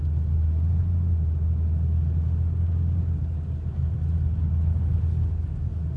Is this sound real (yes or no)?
yes